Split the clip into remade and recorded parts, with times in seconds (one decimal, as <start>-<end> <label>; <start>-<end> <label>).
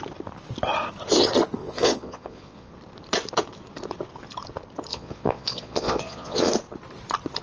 0.0-1.6 recorded; 1.6-2.7 remade; 2.7-4.9 recorded; 4.9-6.5 remade; 6.5-7.4 recorded